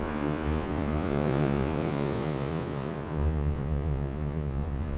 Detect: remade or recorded remade